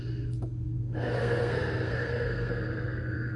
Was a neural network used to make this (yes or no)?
yes